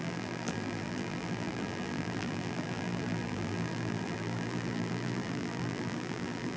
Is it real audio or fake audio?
fake